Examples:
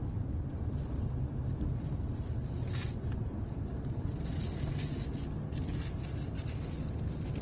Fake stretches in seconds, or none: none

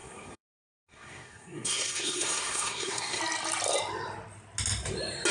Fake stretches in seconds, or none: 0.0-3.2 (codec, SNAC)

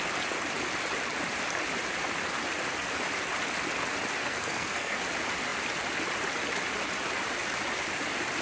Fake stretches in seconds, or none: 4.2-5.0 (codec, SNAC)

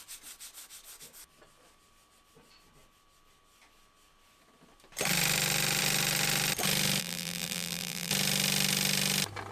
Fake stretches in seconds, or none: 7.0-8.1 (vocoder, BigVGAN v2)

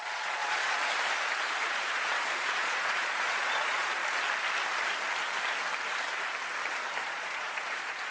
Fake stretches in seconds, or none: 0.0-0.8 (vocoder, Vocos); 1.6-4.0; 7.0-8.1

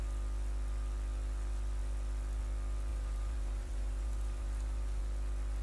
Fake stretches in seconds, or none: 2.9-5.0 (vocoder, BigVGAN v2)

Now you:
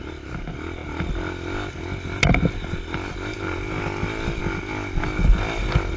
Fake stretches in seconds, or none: none